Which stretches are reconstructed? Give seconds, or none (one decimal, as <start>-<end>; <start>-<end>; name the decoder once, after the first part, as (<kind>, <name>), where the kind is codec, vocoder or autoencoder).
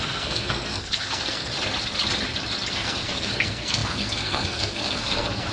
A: 0.0-1.5 (codec, SNAC); 2.7-5.5